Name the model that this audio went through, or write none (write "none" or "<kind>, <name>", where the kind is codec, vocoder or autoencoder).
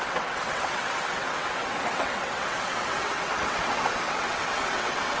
vocoder, WaveNeXt